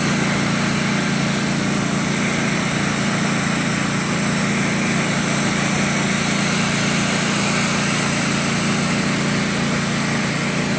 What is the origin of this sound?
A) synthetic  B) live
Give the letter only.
B